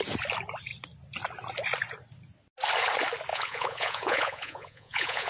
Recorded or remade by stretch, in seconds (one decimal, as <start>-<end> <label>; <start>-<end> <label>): 0.0-3.3 recorded; 3.3-5.3 remade